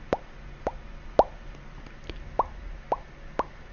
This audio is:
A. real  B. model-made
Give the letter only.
A